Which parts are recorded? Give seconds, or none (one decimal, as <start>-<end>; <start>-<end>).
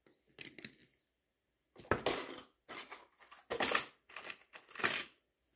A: 0.0-5.6